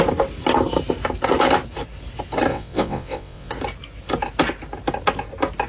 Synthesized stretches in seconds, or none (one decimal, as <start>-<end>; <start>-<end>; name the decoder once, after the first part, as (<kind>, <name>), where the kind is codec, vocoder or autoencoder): 2.5-3.5 (vocoder, WaveNeXt)